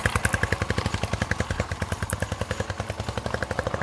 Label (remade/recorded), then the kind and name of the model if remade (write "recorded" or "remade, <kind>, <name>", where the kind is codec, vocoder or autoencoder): recorded